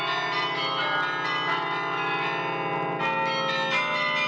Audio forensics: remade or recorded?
recorded